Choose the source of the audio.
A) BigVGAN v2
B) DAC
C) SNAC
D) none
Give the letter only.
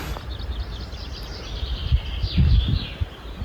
D